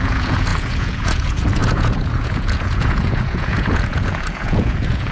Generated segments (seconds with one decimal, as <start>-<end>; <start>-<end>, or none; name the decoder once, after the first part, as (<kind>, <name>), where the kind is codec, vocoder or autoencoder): 0.0-5.1 (vocoder, Vocos)